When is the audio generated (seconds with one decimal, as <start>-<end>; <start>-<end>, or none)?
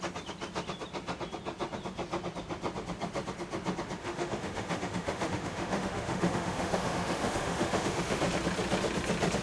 4.0-8.2